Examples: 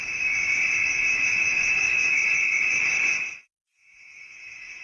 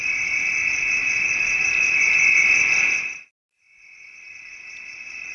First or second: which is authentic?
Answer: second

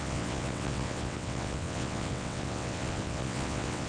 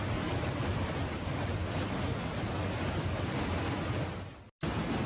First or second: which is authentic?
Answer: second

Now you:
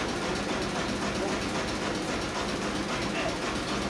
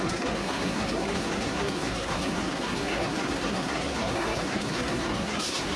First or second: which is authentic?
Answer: first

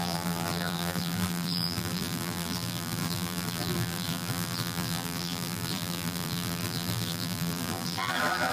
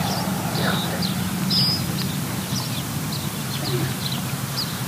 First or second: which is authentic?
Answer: second